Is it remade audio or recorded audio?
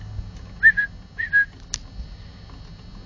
recorded